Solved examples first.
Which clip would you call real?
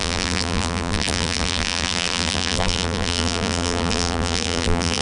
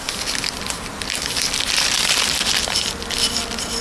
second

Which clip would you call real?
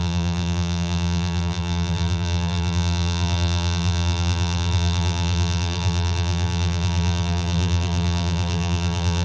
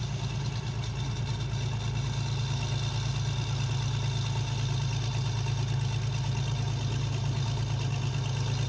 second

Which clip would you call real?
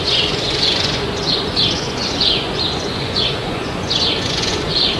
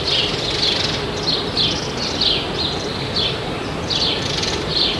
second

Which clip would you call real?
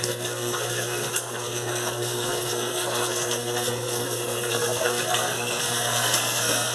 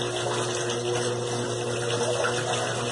second